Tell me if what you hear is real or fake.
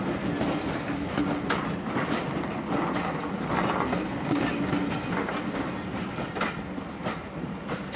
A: real